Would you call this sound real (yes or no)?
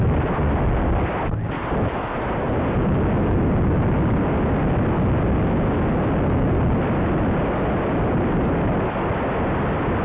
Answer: yes